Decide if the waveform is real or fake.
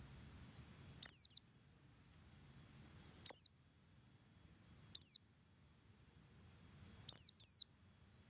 real